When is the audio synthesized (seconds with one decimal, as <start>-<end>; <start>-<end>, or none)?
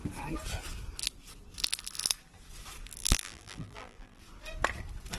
3.0-4.2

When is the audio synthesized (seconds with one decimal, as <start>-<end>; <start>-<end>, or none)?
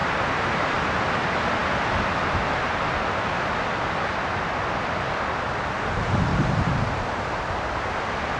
0.0-0.7; 6.3-7.8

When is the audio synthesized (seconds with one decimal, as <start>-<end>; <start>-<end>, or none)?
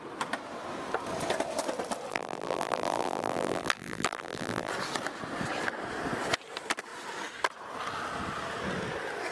2.1-4.7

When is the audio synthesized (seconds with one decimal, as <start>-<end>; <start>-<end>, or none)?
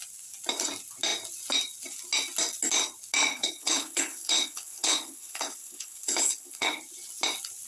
3.3-6.8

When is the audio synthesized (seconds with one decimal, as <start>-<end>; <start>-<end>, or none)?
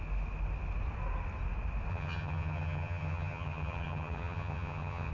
1.9-5.1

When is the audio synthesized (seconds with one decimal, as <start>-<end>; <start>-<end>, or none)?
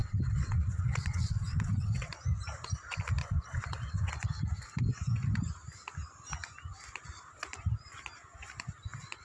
0.0-2.1; 3.2-4.1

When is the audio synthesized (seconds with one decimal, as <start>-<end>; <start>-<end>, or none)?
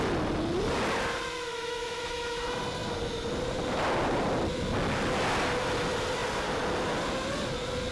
1.5-2.4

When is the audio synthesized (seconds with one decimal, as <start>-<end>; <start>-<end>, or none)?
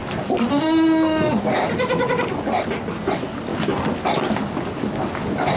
none